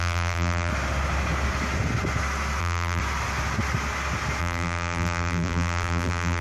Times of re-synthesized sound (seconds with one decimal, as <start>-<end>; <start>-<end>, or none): 0.0-0.7; 2.6-3.0; 4.4-6.4